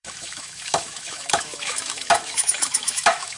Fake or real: fake